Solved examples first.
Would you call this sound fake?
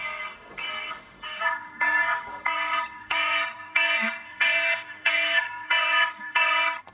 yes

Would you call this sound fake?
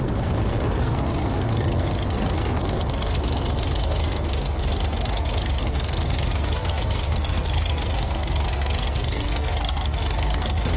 yes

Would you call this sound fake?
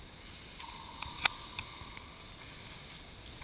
no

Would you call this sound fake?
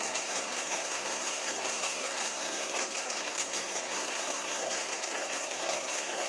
yes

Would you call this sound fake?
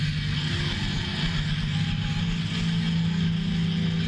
no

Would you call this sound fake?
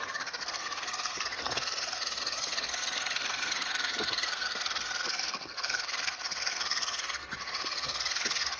yes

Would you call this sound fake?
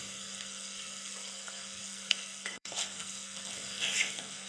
yes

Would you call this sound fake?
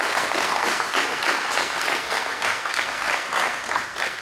yes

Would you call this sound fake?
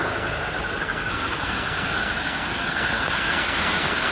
yes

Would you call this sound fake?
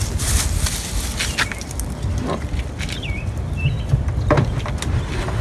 no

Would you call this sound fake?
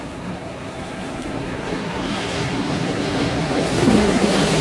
yes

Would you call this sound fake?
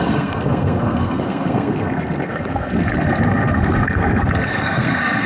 yes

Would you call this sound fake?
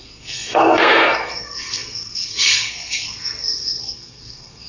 yes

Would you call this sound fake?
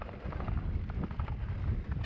no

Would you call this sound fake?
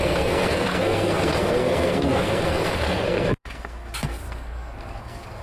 yes